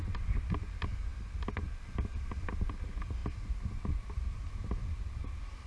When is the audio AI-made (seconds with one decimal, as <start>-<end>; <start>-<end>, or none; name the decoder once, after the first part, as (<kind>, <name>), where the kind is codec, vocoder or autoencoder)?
none